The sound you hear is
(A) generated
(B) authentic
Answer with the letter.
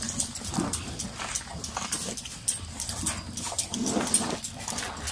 B